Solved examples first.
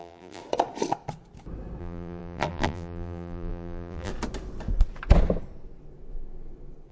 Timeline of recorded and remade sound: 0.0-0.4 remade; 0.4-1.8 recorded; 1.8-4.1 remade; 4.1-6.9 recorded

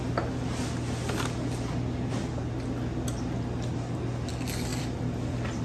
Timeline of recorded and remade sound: 0.0-4.7 recorded; 4.7-5.6 remade

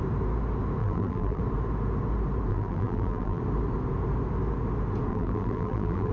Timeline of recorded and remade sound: 0.0-0.8 recorded; 0.8-1.4 remade; 1.4-2.5 recorded; 2.5-3.4 remade; 3.4-5.1 recorded; 5.1-6.1 remade

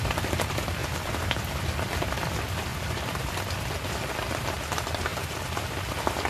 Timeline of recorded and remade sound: 0.0-0.8 recorded; 0.8-1.4 remade; 1.4-2.7 recorded; 2.7-3.4 remade; 3.4-5.1 recorded; 5.1-5.8 remade; 5.8-6.3 recorded

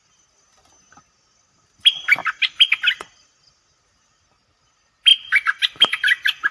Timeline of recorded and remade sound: 0.0-6.5 recorded

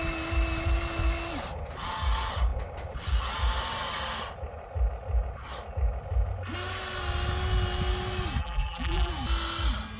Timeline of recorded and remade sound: 0.0-8.4 recorded; 8.4-9.1 remade; 9.1-10.0 recorded